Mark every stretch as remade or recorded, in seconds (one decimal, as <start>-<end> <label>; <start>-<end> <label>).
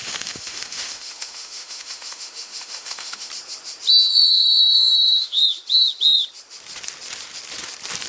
0.0-3.3 remade; 3.3-4.1 recorded; 4.1-5.4 remade; 5.4-8.1 recorded